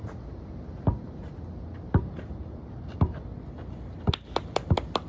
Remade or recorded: recorded